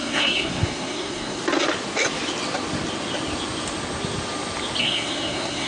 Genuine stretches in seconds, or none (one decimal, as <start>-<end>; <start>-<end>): 1.4-4.8